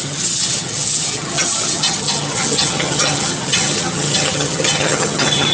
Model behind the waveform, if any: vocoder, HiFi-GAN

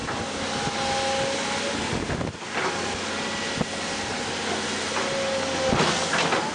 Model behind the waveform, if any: none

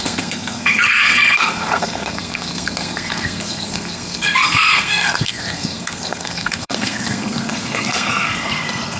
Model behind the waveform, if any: codec, SNAC